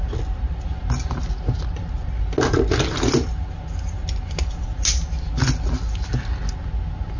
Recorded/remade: recorded